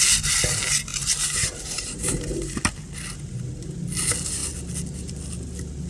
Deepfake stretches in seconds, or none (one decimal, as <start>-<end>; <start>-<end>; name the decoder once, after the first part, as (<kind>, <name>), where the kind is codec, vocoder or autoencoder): 0.9-2.7 (vocoder, BigVGAN v2)